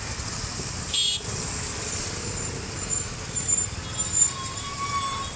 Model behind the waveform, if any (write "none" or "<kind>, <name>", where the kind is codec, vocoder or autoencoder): none